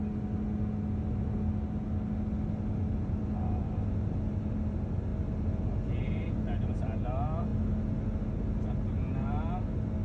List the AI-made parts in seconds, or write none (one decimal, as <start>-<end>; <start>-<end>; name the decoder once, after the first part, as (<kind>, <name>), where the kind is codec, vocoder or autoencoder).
none